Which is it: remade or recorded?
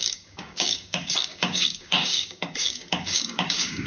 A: remade